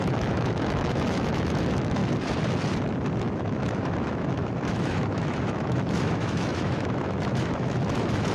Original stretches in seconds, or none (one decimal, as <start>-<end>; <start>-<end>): 2.0-3.2